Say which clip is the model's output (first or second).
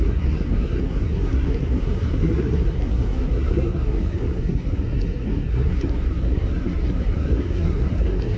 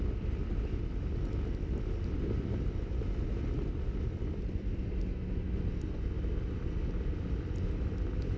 first